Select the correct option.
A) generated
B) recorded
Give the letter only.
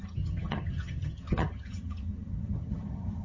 A